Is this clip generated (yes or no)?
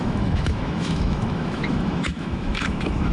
yes